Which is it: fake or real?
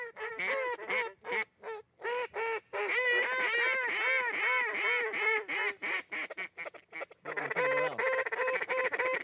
real